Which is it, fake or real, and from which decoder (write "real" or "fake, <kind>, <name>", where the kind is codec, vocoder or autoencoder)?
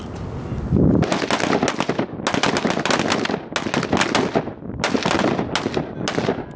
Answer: real